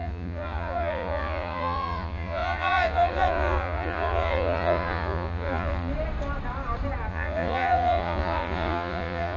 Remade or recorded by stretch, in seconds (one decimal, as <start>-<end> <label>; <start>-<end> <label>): 0.0-5.9 remade; 5.9-7.1 recorded; 7.1-9.4 remade